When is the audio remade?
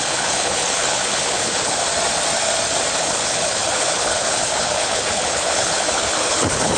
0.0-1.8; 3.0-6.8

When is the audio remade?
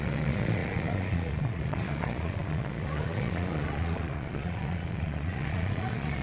0.0-6.2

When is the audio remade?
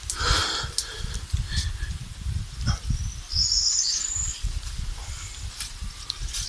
4.3-5.2